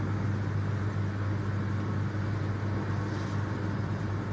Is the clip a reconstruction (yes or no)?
no